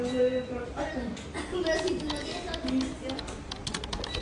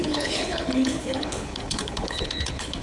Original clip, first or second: first